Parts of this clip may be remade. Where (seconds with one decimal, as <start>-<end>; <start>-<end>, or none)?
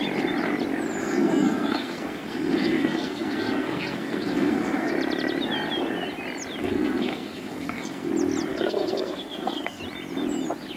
1.0-4.9; 6.6-8.1; 8.5-9.8